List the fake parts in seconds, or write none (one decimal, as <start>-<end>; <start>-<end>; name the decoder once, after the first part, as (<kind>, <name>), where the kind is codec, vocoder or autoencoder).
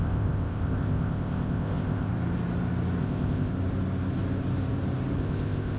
0.0-2.1 (codec, ZipCodec); 3.0-3.5; 5.2-5.8